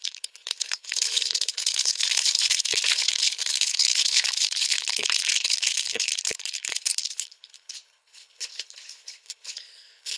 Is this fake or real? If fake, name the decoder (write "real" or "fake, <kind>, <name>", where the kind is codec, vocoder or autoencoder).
fake, codec, HILCodec